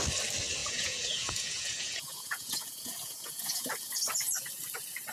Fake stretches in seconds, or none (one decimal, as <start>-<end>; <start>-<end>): 0.6-3.7